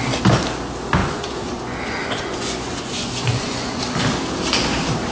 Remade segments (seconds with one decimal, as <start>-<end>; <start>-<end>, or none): 1.0-3.8